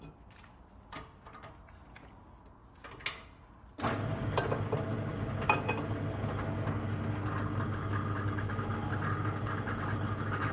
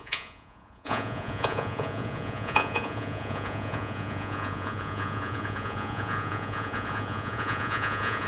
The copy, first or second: second